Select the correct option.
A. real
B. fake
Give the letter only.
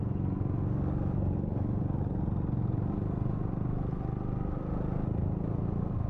A